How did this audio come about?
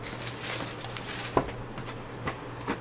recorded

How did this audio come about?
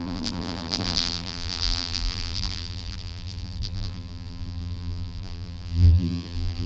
remade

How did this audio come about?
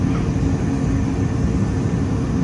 recorded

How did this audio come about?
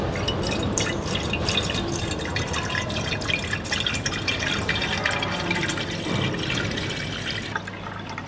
recorded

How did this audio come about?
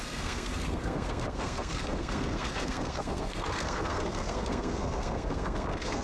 remade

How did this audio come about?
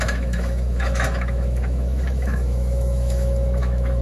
remade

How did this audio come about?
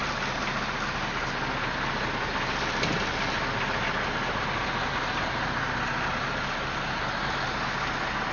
recorded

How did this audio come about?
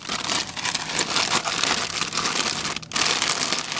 recorded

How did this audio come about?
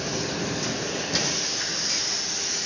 recorded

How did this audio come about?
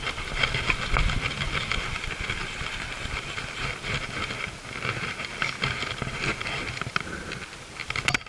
recorded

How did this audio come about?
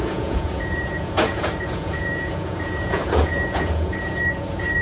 remade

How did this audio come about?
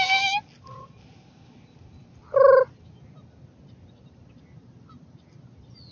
recorded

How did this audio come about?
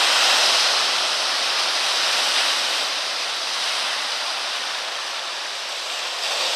recorded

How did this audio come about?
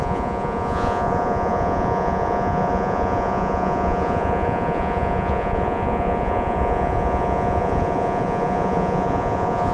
remade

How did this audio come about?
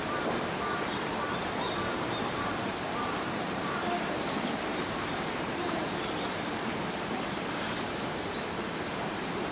remade